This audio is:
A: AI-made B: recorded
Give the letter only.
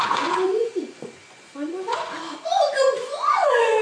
A